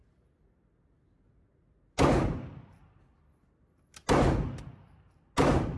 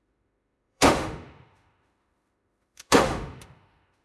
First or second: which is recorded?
first